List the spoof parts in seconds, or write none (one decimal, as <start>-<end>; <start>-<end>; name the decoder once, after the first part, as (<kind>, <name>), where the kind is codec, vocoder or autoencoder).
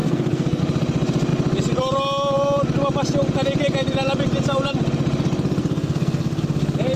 0.0-0.6 (codec, SNAC); 5.6-6.4